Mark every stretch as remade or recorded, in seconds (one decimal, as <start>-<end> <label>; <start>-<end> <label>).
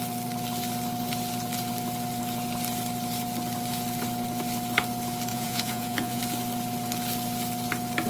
0.0-5.3 recorded; 5.3-6.2 remade; 6.2-8.1 recorded